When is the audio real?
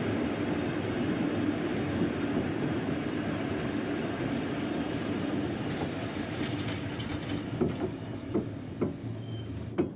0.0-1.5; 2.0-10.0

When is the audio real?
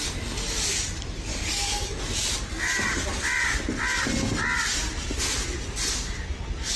0.0-1.3; 2.0-6.8